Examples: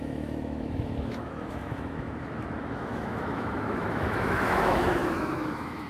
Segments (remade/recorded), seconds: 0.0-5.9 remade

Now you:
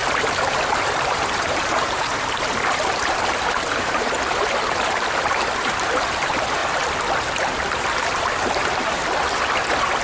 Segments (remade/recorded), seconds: 0.0-2.1 remade; 2.1-2.9 recorded; 2.9-6.6 remade; 6.6-8.0 recorded; 8.0-9.0 remade; 9.0-10.0 recorded

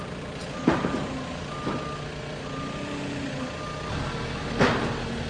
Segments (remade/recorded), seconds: 0.0-5.3 recorded

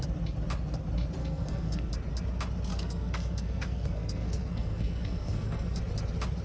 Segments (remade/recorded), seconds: 0.0-1.2 recorded; 1.2-1.9 remade; 1.9-2.7 recorded; 2.7-5.8 remade; 5.8-6.4 recorded

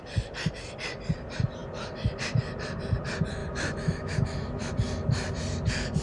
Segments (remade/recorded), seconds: 0.0-3.4 recorded; 3.4-4.7 remade; 4.7-6.0 recorded

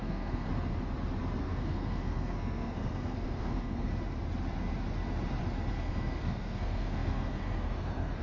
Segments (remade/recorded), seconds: 0.0-0.5 remade; 0.5-1.4 recorded; 1.4-3.9 remade; 3.9-5.7 recorded; 5.7-8.2 remade

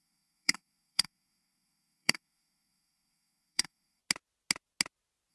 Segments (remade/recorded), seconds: 0.0-4.0 remade; 4.0-5.3 recorded

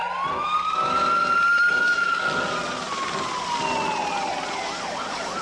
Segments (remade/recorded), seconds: 0.0-1.7 recorded; 1.7-2.1 remade; 2.1-5.4 recorded